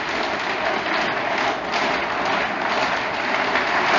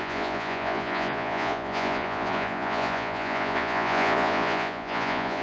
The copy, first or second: second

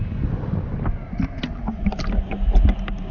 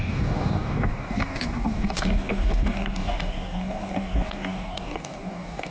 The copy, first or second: second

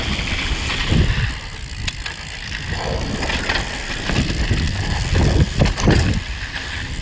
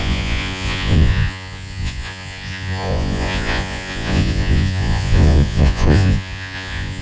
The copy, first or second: second